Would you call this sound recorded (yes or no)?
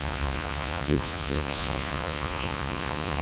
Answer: no